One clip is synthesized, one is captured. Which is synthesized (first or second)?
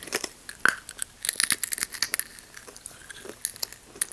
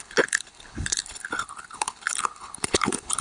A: second